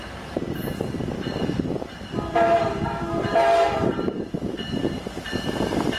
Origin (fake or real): fake